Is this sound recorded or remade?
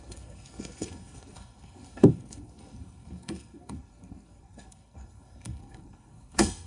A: remade